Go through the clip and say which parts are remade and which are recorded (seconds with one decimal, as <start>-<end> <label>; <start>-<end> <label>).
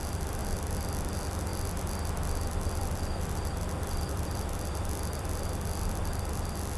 0.0-6.8 recorded